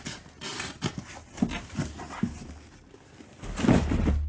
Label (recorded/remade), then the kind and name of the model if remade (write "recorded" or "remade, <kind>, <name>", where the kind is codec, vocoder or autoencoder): recorded